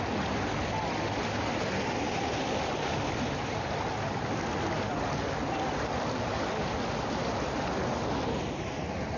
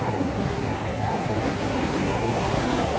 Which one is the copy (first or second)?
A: second